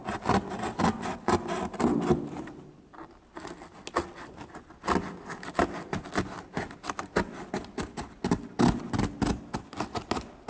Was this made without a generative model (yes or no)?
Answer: yes